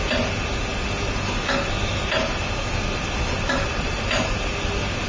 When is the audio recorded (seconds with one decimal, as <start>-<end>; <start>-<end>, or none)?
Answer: 0.0-5.1